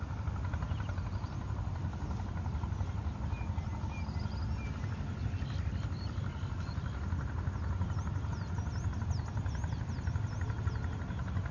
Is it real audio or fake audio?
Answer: real